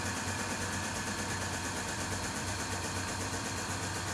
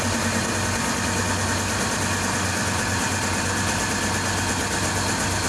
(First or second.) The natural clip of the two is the second